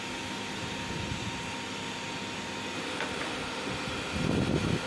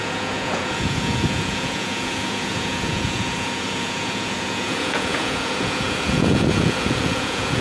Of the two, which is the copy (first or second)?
second